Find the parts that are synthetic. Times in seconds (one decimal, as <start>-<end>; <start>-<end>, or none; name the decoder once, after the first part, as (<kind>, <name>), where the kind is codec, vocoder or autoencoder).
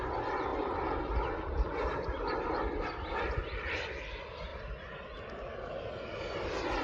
none